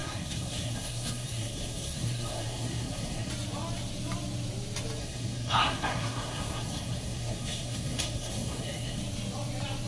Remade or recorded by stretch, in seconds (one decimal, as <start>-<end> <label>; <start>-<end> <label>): 0.0-3.3 remade; 3.3-5.0 recorded; 5.0-9.0 remade; 9.0-9.9 recorded